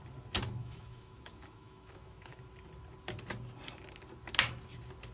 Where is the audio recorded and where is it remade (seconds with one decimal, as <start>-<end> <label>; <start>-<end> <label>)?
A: 0.0-0.6 recorded; 0.6-2.4 remade; 2.4-5.1 recorded